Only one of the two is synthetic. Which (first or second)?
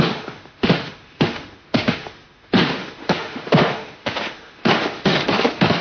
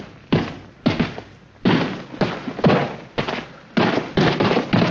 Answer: first